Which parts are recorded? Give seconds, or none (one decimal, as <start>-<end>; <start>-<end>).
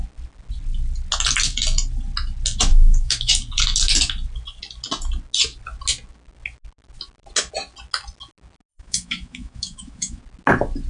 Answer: 0.0-2.7; 3.3-8.7; 10.2-10.9